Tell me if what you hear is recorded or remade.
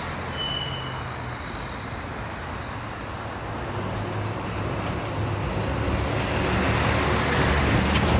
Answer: recorded